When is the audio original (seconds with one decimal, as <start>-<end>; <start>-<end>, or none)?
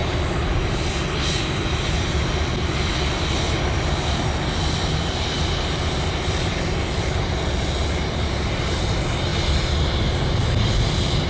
0.0-11.3